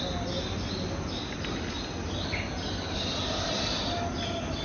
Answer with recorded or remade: recorded